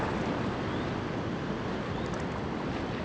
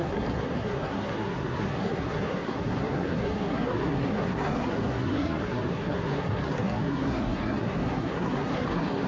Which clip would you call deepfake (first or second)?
second